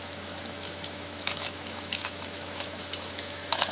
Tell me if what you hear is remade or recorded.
remade